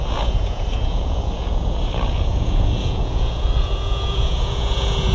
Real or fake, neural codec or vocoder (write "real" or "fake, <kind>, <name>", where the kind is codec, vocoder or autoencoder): fake, vocoder, Vocos